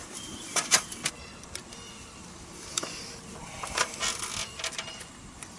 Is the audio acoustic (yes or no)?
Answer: yes